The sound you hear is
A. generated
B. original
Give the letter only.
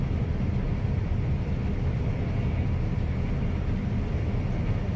B